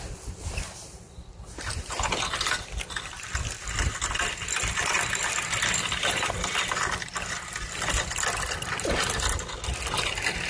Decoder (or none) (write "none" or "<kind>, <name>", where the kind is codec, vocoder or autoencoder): none